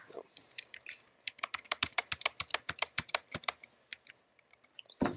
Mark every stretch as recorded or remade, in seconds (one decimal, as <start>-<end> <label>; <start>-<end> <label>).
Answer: 0.0-2.0 remade; 2.0-2.6 recorded; 2.6-5.2 remade